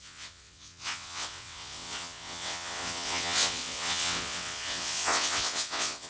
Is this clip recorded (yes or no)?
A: no